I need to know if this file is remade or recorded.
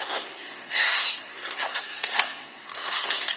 remade